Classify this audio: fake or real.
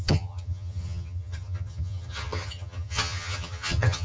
fake